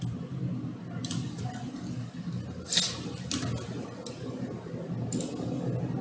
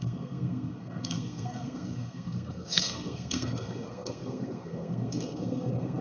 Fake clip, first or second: second